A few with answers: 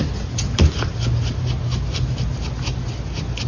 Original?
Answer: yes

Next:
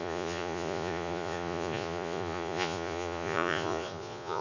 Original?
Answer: no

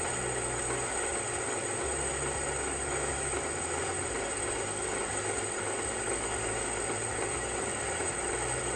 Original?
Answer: yes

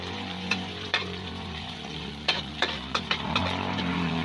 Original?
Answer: no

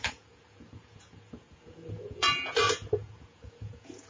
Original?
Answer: no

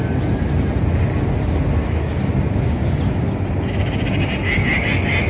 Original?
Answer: yes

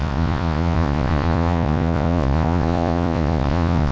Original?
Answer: no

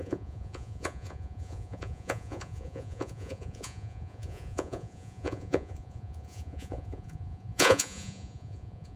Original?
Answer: no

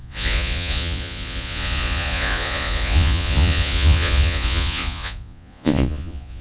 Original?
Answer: no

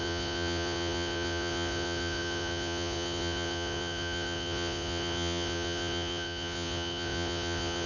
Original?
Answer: no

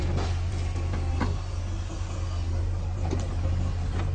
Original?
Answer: yes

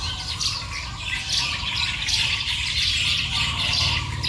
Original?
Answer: yes